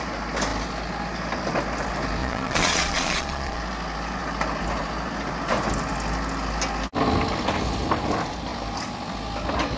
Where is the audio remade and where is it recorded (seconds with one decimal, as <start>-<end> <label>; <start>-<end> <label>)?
0.0-2.2 recorded; 2.2-3.6 remade; 3.6-9.8 recorded